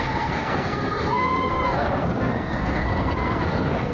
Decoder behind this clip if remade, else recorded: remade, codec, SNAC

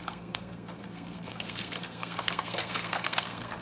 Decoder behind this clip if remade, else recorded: remade, codec, SNAC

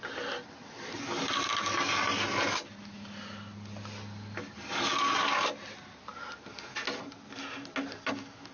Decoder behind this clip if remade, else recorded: recorded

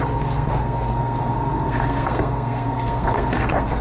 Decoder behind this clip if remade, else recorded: remade, codec, SNAC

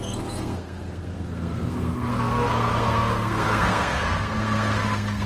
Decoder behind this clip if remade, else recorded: remade, codec, SNAC